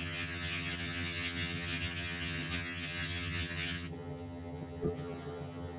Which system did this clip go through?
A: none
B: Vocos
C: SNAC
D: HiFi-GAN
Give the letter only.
D